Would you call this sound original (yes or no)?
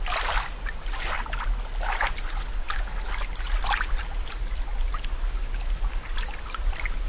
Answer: yes